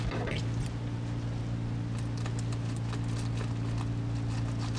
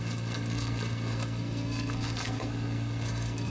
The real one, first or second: first